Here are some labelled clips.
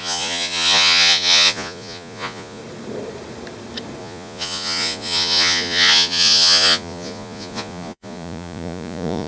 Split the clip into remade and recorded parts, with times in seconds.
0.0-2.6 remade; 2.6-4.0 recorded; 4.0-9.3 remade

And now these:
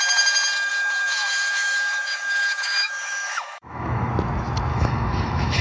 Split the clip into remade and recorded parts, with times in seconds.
0.0-0.7 recorded; 0.7-4.1 remade; 4.1-4.7 recorded; 4.7-5.6 remade